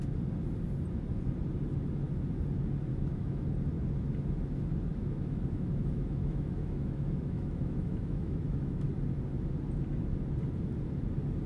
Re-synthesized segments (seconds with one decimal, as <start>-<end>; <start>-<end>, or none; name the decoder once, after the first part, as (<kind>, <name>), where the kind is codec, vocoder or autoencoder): 2.9-3.4 (autoencoder, DAC-VAE); 4.9-8.9